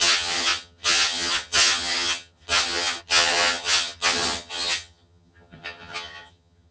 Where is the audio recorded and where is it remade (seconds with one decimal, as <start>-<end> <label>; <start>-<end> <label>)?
0.0-6.7 remade